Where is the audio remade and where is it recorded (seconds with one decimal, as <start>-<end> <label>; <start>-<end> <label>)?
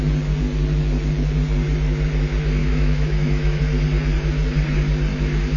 0.0-2.6 recorded; 2.6-3.6 remade; 3.6-5.6 recorded